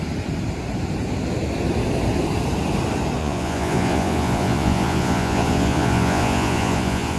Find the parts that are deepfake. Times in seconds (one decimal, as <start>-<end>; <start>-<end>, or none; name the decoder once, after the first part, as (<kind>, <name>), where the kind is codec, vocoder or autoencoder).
3.2-7.2 (vocoder, Vocos)